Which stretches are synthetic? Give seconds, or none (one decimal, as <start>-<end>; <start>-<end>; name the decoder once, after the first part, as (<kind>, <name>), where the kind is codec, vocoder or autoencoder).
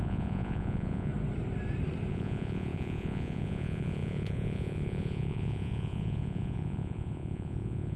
0.0-1.1 (vocoder, Vocos); 2.1-8.0